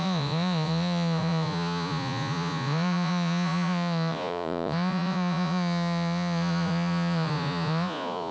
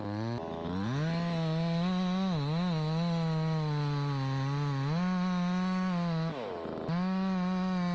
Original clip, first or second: second